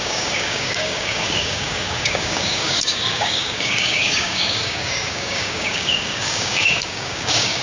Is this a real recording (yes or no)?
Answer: no